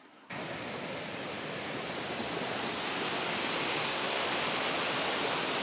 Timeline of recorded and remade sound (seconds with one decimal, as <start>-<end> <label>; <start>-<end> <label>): 0.0-0.4 remade; 0.4-3.8 recorded; 3.8-4.2 remade; 4.2-5.6 recorded